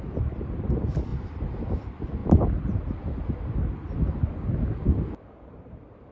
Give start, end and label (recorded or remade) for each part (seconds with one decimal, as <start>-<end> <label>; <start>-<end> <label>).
0.0-6.1 recorded